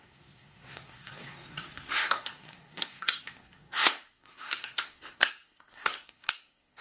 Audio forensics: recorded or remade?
remade